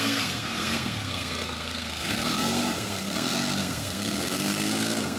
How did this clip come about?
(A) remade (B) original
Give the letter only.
A